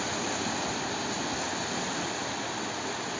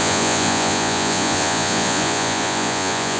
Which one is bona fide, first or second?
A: first